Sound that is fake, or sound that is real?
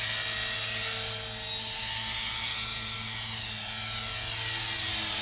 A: real